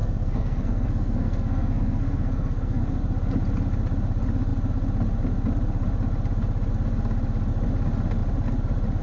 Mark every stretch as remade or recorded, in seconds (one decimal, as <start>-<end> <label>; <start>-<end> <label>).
0.0-3.0 remade; 3.0-9.0 recorded